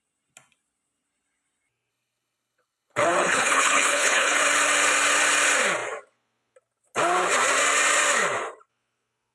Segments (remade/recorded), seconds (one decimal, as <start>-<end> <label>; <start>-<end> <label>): 0.0-1.9 recorded; 1.9-4.4 remade; 4.4-9.3 recorded